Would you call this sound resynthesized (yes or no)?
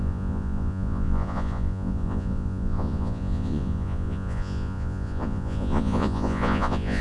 yes